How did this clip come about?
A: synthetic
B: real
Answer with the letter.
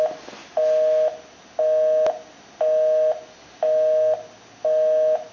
B